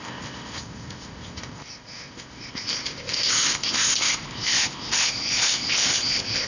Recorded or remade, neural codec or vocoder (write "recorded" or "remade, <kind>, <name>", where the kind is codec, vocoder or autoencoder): remade, codec, ZipCodec